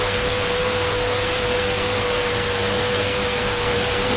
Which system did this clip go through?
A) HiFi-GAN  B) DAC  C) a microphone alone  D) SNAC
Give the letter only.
D